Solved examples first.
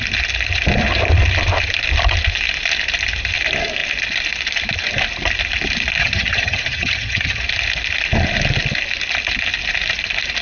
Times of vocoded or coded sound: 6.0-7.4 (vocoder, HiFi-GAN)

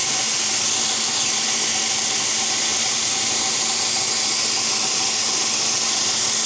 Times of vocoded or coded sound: none

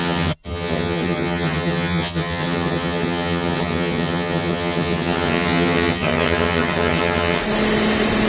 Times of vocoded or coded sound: 0.0-7.4 (vocoder, HiFi-GAN)

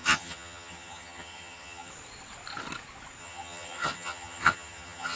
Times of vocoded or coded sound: 0.0-1.9 (vocoder, HiFi-GAN); 3.2-5.2

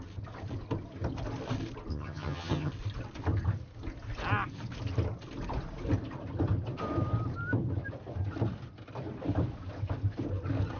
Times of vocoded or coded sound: 1.9-2.7 (vocoder, HiFi-GAN)